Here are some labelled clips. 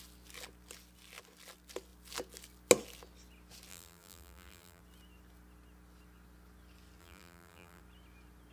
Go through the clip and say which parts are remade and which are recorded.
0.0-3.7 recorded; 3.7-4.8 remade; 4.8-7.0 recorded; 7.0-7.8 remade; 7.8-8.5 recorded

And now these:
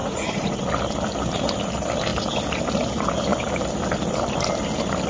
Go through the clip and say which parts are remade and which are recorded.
0.0-0.6 remade; 0.6-5.1 recorded

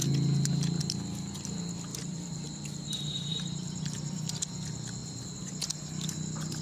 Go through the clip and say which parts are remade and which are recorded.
0.0-1.9 recorded; 1.9-4.3 remade; 4.3-5.0 recorded; 5.0-5.5 remade; 5.5-6.6 recorded